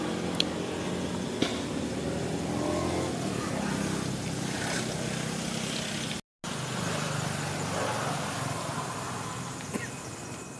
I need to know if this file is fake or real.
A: real